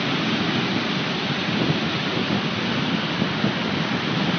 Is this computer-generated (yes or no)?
no